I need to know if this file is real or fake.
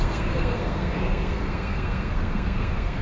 fake